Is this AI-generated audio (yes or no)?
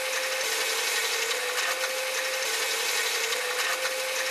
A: no